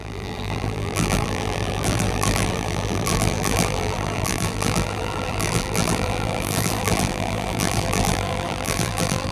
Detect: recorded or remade remade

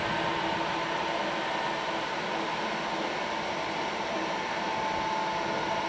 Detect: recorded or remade recorded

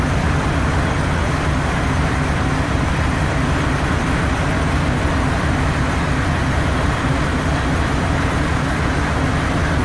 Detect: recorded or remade remade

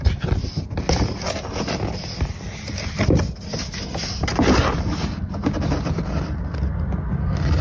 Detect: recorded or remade recorded